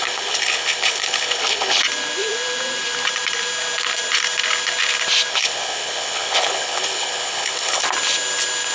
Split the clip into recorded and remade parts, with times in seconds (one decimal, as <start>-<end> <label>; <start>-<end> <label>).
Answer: 0.0-1.8 remade; 1.8-5.3 recorded; 5.3-7.8 remade; 7.8-8.7 recorded